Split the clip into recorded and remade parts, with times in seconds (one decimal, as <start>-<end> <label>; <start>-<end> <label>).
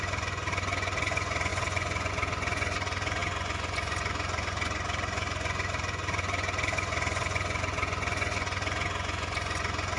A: 0.0-10.0 remade